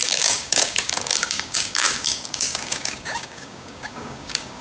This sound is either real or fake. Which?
fake